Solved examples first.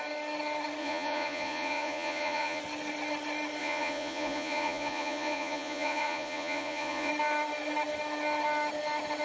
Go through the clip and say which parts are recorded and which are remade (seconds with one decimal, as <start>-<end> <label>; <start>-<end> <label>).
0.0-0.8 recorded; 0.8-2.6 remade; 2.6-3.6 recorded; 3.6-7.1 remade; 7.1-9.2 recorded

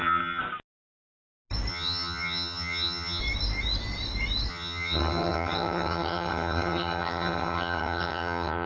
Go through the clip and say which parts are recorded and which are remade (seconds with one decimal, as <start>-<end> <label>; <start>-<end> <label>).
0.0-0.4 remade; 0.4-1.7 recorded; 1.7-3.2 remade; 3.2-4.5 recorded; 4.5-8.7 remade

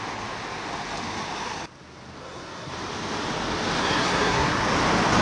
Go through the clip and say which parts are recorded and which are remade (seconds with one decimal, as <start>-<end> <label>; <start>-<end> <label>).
0.0-2.2 recorded; 2.2-2.7 remade; 2.7-3.8 recorded; 3.8-4.6 remade; 4.6-5.2 recorded